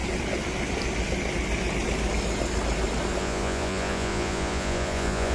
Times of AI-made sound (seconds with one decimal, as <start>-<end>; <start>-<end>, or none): 3.2-5.3